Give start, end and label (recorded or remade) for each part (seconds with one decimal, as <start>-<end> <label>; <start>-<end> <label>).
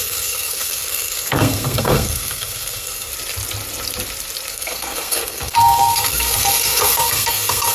0.0-3.1 remade; 3.1-4.5 recorded; 4.5-7.7 remade